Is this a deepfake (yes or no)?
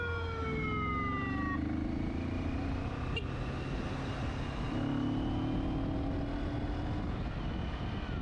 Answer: no